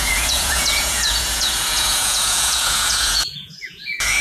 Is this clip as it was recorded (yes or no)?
no